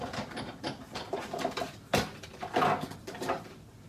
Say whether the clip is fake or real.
real